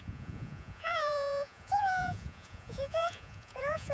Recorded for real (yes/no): no